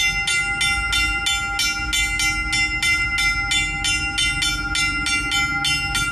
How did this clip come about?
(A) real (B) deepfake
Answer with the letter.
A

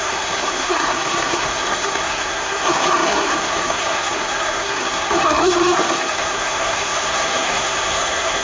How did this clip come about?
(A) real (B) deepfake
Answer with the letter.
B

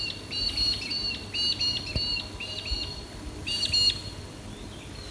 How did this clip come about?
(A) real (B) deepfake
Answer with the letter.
A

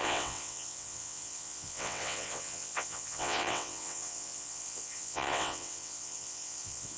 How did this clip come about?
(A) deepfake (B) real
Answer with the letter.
A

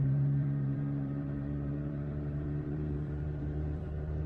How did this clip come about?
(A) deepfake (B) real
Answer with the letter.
A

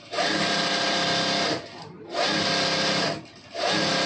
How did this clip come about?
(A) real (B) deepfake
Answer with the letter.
A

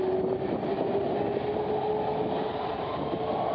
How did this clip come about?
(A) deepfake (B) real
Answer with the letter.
B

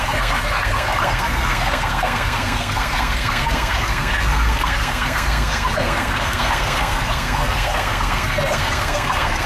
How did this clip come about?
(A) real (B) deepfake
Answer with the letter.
B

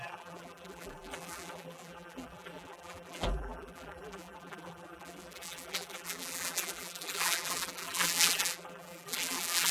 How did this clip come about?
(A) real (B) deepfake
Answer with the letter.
B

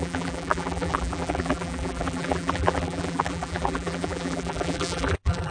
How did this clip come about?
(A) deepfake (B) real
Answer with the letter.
A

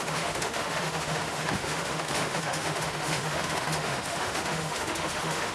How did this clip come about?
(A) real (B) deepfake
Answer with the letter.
B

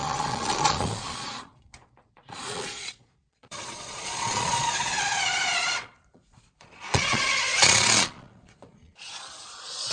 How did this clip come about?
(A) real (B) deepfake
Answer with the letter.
B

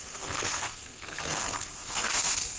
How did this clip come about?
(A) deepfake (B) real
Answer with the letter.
A